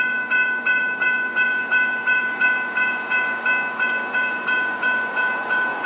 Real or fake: fake